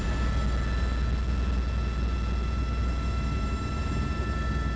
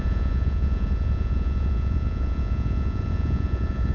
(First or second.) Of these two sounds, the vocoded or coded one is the second